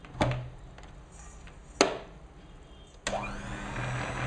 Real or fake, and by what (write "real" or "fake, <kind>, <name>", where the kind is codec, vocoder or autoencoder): real